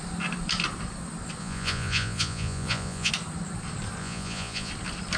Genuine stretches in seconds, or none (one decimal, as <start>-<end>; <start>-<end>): 0.0-1.4; 3.1-4.0; 4.7-5.2